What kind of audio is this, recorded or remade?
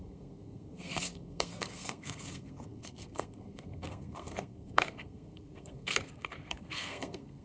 remade